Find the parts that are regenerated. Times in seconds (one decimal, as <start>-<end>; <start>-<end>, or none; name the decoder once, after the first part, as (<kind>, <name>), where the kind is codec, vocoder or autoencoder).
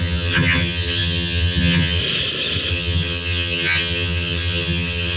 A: 0.0-2.0 (vocoder, HiFi-GAN); 2.7-5.2